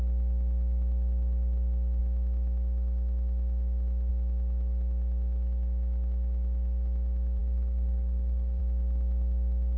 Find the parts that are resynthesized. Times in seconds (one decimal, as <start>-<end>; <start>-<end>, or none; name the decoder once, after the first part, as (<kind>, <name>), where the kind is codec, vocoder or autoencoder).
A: 7.4-8.6 (codec, DAC)